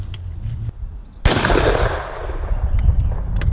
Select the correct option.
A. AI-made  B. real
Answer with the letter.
B